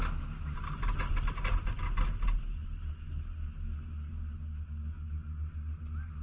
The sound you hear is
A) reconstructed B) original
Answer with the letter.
B